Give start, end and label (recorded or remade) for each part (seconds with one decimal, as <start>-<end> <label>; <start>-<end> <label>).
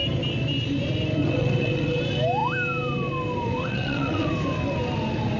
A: 0.0-1.2 recorded; 1.2-2.0 remade; 2.0-3.6 recorded; 3.6-4.3 remade; 4.3-5.4 recorded